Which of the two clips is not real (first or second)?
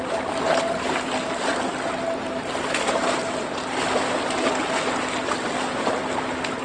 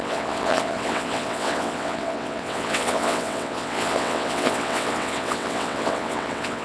second